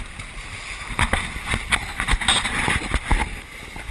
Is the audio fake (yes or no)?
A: no